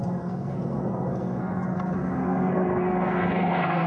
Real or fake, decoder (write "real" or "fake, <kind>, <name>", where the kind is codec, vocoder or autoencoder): fake, codec, SNAC